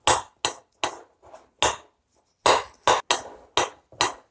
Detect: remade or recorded recorded